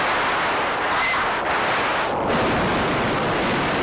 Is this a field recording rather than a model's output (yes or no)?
no